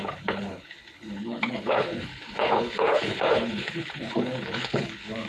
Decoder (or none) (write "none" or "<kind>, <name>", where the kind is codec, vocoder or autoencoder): codec, HILCodec